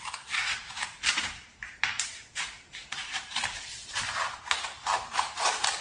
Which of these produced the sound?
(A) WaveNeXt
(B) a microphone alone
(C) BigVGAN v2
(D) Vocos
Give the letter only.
C